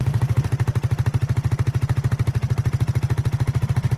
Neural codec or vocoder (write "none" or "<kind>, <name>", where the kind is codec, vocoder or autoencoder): none